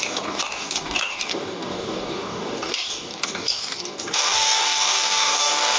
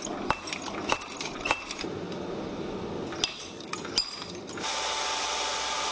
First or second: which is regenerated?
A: first